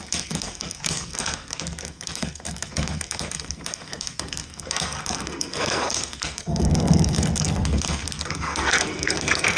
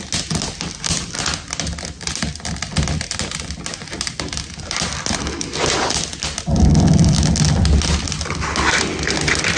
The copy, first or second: first